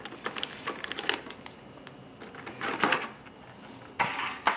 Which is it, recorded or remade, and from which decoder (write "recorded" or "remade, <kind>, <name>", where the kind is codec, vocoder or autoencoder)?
recorded